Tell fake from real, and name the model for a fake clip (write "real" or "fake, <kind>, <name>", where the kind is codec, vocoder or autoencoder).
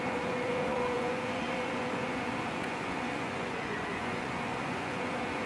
fake, vocoder, Vocos